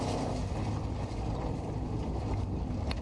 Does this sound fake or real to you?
real